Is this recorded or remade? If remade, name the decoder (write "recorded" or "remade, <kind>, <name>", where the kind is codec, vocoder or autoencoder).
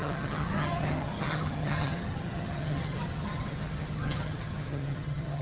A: remade, vocoder, HiFi-GAN